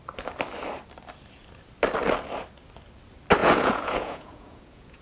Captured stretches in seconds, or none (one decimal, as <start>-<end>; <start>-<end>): 0.0-3.4

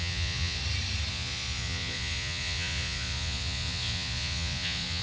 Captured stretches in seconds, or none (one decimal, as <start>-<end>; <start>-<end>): 0.6-1.1

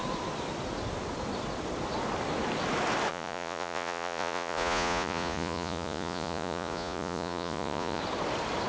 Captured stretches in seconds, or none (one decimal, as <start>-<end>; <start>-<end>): 0.0-3.1; 8.0-8.7

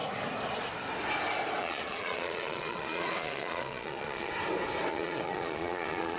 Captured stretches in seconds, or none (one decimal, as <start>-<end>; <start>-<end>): 0.0-1.6; 4.3-4.9

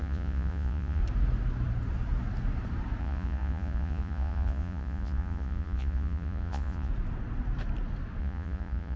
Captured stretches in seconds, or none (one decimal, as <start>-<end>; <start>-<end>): 1.0-3.0; 6.9-8.2